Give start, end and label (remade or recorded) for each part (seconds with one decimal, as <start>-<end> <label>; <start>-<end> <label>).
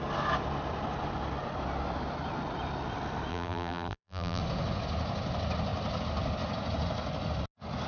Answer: 0.0-3.3 recorded; 3.3-4.4 remade; 4.4-7.9 recorded